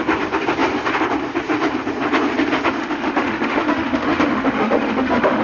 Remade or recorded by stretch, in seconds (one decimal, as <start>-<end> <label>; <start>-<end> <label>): 0.0-2.8 recorded; 2.8-5.4 remade